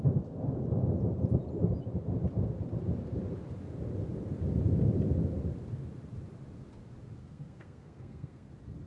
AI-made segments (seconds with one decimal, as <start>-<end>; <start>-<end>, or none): 7.2-8.5